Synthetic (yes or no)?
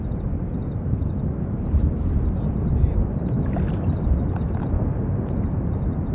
no